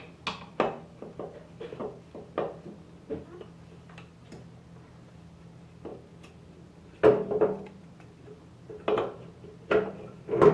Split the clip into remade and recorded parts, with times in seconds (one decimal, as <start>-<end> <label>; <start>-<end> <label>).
0.0-10.5 recorded